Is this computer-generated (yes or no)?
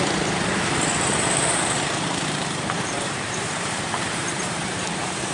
yes